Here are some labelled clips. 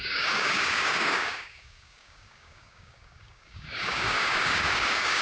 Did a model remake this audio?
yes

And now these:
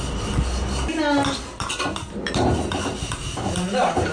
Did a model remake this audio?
no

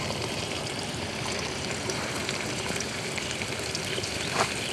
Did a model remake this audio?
yes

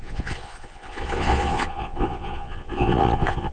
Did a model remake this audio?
yes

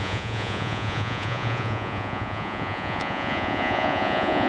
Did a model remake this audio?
yes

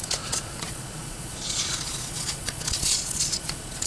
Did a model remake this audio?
yes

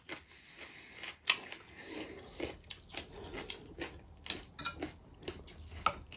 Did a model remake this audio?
no